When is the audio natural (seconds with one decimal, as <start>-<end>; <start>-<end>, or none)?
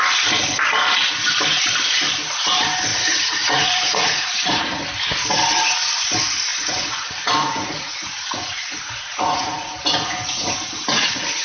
0.0-2.9; 4.8-6.5